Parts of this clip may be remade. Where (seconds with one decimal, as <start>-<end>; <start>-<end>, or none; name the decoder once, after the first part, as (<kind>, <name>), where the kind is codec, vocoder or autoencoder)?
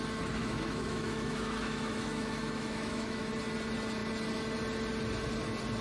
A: 0.4-3.3 (autoencoder, DAC-VAE)